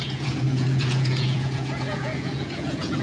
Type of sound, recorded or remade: remade